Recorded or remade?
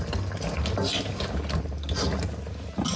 recorded